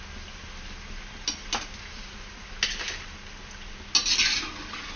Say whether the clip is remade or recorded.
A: recorded